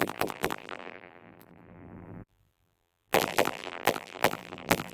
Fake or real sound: fake